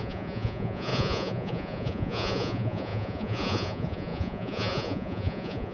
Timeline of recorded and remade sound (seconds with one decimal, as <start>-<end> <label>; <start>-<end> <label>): 0.0-5.7 remade